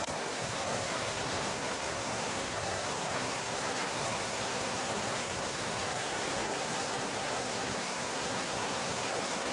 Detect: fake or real fake